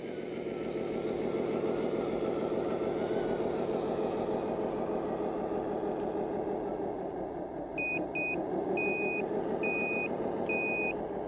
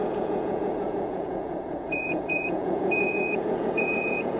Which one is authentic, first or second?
first